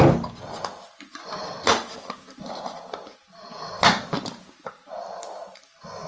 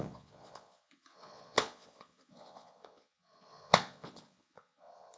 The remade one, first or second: second